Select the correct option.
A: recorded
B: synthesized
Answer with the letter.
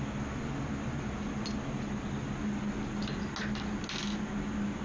A